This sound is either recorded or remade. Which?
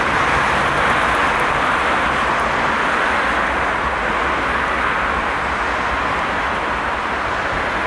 recorded